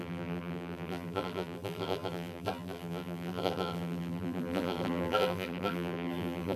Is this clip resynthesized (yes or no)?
yes